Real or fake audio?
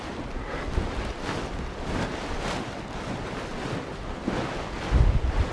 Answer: real